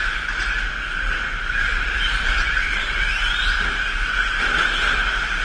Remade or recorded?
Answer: recorded